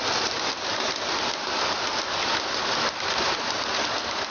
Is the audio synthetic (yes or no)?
no